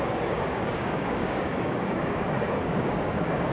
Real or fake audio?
fake